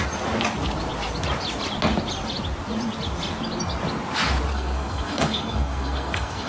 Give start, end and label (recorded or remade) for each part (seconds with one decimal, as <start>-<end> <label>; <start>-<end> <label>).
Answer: 0.0-4.5 recorded; 4.5-6.5 remade